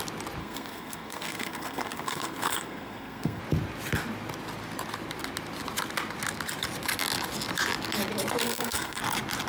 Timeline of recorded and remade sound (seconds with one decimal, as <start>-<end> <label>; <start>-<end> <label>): 0.0-0.4 recorded; 0.4-3.4 remade; 3.4-8.4 recorded; 8.4-9.0 remade; 9.0-9.5 recorded